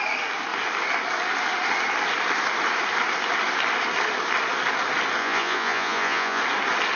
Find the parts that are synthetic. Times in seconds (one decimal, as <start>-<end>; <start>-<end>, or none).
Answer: 5.2-6.4